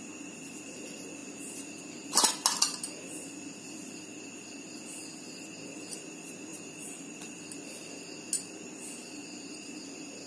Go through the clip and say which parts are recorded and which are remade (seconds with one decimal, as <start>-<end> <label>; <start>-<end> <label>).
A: 0.0-6.5 recorded; 6.5-7.4 remade; 7.4-9.2 recorded; 9.2-9.7 remade; 9.7-10.3 recorded